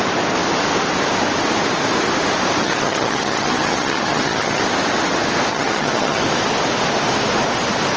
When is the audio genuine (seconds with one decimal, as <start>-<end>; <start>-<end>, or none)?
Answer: 0.0-2.6; 4.6-5.5; 6.2-8.0